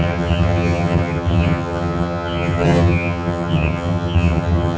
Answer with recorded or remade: remade